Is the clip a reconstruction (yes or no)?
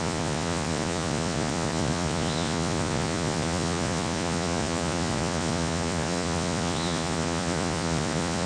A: yes